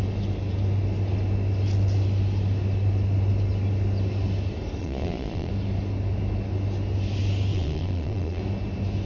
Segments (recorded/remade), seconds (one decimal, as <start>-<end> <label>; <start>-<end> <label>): 0.0-4.8 recorded; 4.8-5.5 remade; 5.5-7.5 recorded; 7.5-8.4 remade; 8.4-9.1 recorded